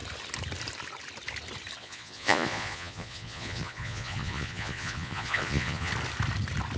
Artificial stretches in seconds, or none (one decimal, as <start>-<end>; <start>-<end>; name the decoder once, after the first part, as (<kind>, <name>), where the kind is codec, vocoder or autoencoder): 1.8-5.9 (vocoder, Vocos)